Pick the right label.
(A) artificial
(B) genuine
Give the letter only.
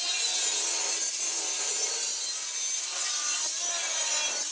B